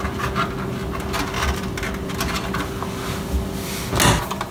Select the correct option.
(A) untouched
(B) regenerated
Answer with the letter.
A